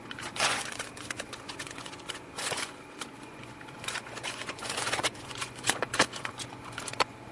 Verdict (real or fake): fake